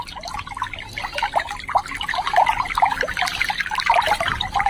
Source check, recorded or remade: recorded